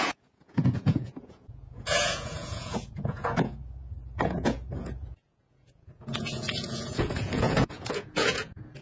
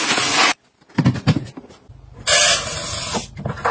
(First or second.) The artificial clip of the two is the first